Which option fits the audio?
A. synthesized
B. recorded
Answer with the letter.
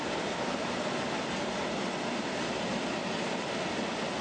B